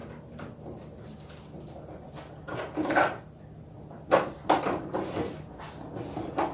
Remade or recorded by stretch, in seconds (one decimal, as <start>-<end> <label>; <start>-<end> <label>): 0.0-6.5 recorded